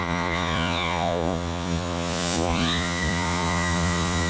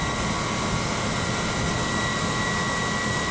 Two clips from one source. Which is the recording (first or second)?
second